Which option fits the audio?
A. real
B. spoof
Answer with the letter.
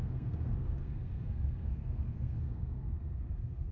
B